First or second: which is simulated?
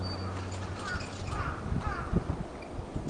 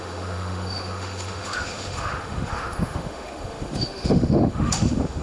second